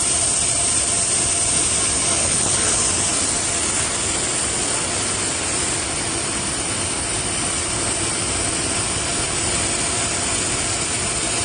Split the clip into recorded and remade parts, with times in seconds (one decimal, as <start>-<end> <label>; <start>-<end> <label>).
0.0-2.3 recorded; 2.3-2.8 remade; 2.8-11.4 recorded